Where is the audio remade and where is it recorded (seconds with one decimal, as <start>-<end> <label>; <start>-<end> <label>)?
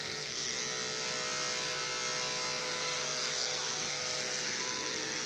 0.0-0.6 remade; 0.6-2.6 recorded; 2.6-5.3 remade